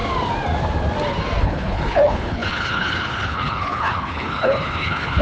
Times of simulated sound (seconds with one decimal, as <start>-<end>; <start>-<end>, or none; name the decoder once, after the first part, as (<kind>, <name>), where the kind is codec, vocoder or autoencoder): 1.4-5.2 (codec, HILCodec)